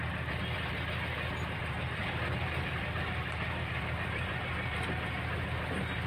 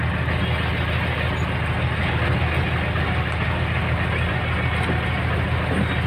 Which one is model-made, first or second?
first